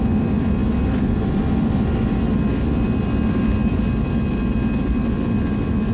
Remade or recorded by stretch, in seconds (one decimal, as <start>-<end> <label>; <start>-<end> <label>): 0.0-5.9 recorded